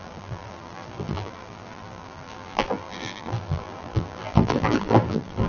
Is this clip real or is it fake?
fake